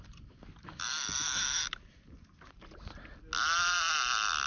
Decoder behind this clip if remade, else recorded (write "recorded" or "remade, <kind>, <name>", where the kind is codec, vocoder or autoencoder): recorded